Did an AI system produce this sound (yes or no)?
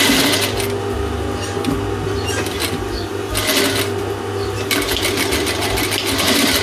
no